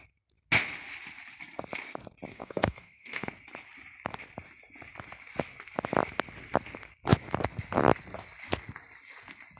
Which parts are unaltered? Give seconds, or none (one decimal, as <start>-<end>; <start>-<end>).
0.0-2.3; 3.3-9.6